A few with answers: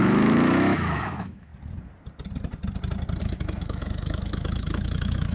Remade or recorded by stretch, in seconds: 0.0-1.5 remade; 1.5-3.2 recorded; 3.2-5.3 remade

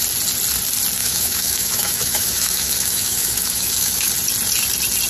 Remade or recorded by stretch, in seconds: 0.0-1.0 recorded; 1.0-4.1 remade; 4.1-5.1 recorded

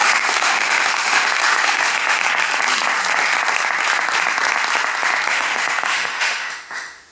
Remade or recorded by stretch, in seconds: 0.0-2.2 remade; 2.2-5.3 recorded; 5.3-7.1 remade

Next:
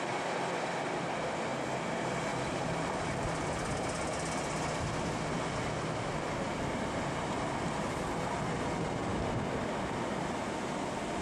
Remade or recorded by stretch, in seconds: 0.0-11.2 recorded

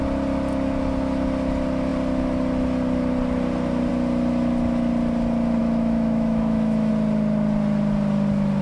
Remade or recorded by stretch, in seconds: 0.0-5.6 recorded; 5.6-6.9 remade; 6.9-8.6 recorded

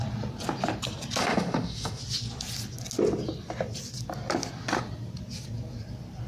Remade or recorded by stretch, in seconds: 0.0-1.2 recorded; 1.2-2.0 remade; 2.0-6.3 recorded